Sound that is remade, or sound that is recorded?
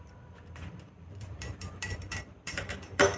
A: remade